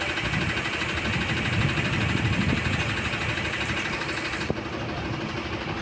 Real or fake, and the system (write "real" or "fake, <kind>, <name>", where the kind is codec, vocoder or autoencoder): real